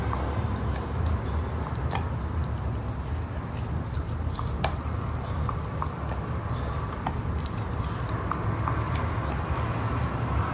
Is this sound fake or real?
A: real